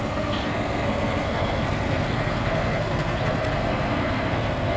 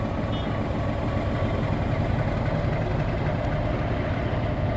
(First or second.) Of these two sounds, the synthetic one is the first